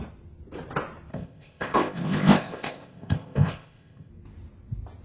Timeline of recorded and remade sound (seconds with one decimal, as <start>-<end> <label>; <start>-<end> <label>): 0.0-1.1 recorded; 1.1-4.1 remade; 4.1-5.0 recorded